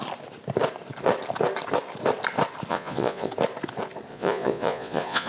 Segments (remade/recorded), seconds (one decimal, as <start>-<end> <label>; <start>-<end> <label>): 0.0-2.7 recorded; 2.7-3.3 remade; 3.3-4.1 recorded; 4.1-5.3 remade